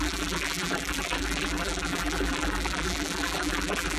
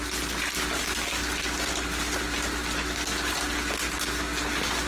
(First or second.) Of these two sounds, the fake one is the first